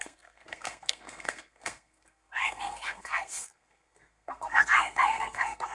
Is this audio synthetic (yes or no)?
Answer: yes